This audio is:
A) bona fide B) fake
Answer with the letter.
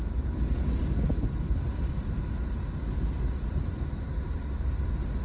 A